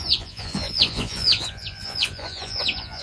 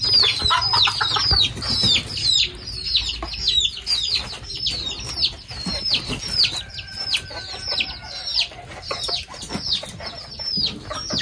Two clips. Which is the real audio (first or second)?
second